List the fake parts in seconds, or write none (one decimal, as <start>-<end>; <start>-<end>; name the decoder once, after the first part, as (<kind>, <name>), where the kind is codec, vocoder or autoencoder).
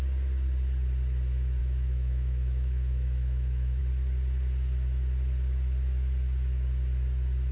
1.6-3.8 (autoencoder, DAC-VAE)